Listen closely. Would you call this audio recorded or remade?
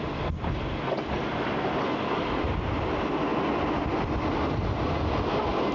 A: recorded